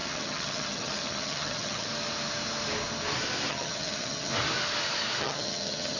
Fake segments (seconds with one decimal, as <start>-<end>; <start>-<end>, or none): 0.0-1.9; 3.5-4.3; 5.2-6.0